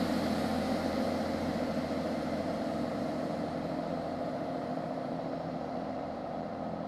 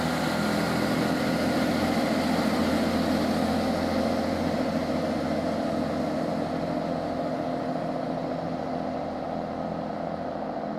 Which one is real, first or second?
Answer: second